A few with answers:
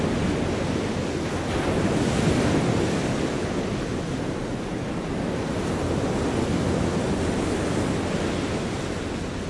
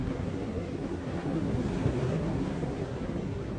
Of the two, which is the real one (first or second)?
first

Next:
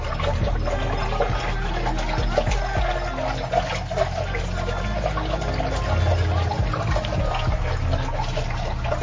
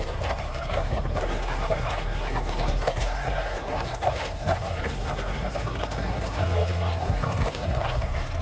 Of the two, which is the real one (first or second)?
first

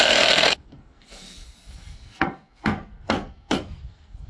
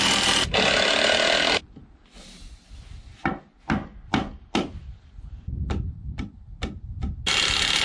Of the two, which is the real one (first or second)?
second